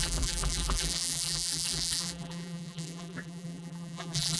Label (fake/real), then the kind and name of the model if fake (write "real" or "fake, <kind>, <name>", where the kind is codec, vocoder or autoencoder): fake, vocoder, BigVGAN v2